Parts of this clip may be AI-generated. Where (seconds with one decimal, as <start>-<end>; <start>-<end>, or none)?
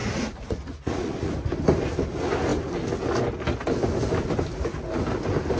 0.0-1.3